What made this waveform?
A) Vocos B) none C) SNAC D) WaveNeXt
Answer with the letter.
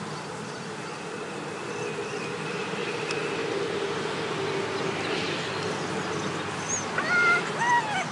B